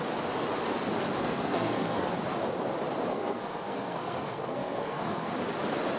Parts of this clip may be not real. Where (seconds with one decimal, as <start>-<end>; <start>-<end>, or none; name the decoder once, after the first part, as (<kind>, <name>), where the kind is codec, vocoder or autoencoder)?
1.2-2.1 (codec, SNAC); 3.1-5.3